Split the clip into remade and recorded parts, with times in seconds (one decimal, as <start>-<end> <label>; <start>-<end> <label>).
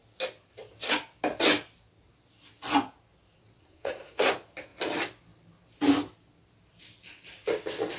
0.0-3.6 recorded; 3.6-4.3 remade; 4.3-8.0 recorded